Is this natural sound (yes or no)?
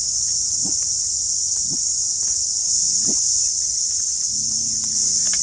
yes